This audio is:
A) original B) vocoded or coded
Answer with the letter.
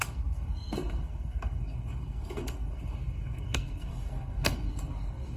B